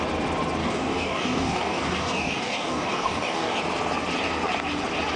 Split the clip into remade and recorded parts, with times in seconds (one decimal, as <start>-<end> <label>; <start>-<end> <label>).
0.0-0.6 recorded; 0.6-3.6 remade; 3.6-5.2 recorded